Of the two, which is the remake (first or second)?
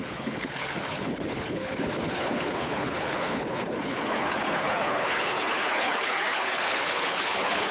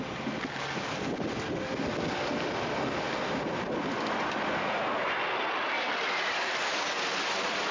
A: first